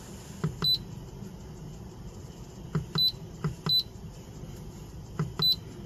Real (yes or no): yes